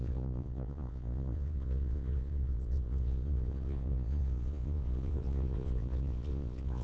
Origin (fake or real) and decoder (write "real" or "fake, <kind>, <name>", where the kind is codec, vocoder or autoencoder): fake, vocoder, Vocos